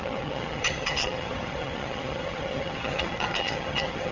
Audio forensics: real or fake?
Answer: fake